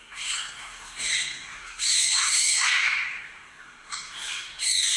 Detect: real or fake fake